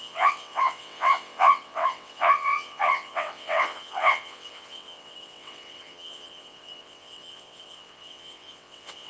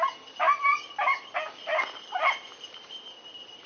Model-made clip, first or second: first